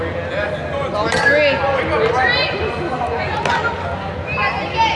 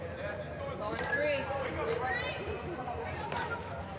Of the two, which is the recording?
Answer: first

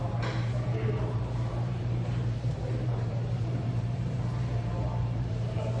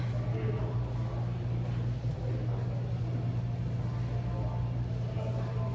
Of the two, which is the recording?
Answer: second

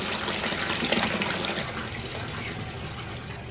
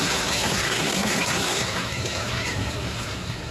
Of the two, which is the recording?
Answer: first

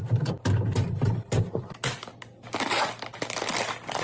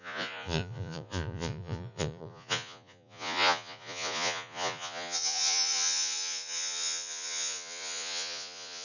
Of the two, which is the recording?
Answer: first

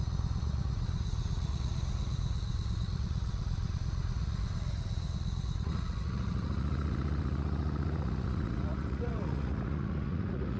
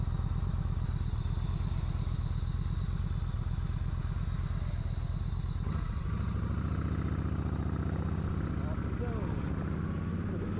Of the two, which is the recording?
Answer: second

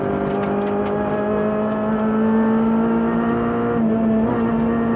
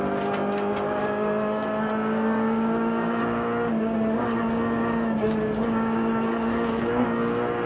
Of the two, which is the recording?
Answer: first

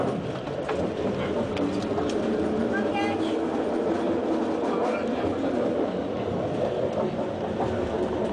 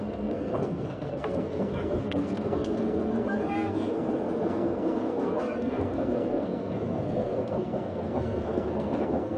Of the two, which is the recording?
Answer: first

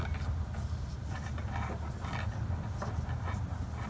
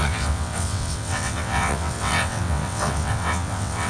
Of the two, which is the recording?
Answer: first